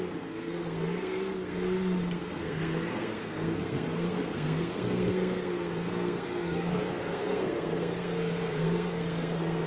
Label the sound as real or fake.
fake